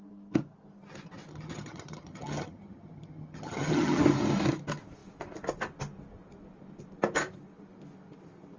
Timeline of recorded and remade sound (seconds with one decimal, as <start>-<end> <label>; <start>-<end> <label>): 0.0-1.3 recorded; 1.3-4.0 remade; 4.0-8.6 recorded